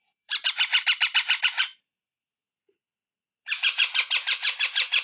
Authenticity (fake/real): fake